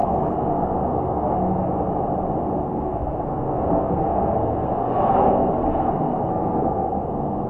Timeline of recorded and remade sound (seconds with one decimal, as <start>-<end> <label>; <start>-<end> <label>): 0.0-1.7 remade; 1.7-2.7 recorded; 2.7-7.5 remade